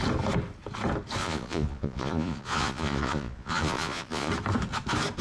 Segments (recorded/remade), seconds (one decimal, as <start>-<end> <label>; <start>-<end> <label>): 0.0-1.2 recorded; 1.2-4.3 remade; 4.3-5.2 recorded